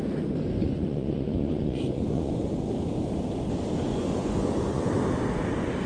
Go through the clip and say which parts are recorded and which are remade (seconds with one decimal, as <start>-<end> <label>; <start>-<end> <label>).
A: 0.0-0.6 recorded; 0.6-2.4 remade; 2.4-3.9 recorded; 3.9-4.9 remade; 4.9-5.9 recorded